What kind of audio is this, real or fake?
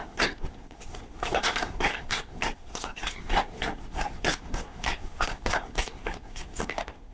fake